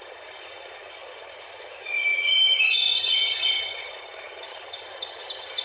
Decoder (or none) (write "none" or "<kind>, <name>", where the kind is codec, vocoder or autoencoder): vocoder, HiFi-GAN